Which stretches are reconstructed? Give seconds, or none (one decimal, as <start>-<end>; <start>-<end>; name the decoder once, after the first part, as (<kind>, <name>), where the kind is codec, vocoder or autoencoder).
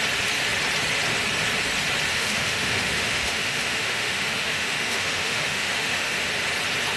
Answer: 2.1-6.3 (autoencoder, DAC-VAE)